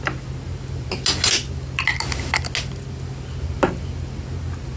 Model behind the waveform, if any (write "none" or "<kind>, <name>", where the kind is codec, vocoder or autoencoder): none